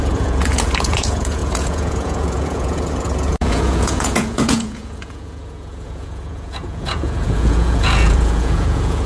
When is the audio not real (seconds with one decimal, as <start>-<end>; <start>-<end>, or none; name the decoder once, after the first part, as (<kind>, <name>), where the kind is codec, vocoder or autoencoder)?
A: 0.0-9.1 (vocoder, Vocos)